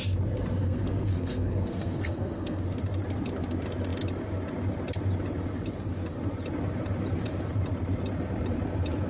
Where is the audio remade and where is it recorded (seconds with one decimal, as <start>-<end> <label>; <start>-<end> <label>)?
0.0-0.6 recorded; 0.6-2.6 remade; 2.6-9.1 recorded